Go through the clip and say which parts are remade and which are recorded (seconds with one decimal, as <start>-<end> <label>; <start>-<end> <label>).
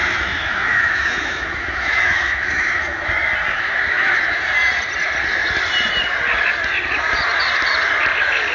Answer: 0.0-3.1 remade; 3.1-3.5 recorded; 3.5-4.4 remade; 4.4-8.5 recorded